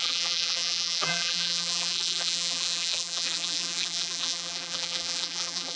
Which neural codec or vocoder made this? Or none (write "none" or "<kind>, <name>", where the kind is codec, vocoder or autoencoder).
vocoder, BigVGAN v2